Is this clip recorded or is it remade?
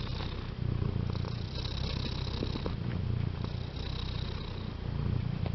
recorded